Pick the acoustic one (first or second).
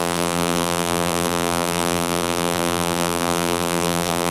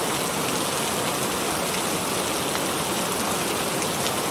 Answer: second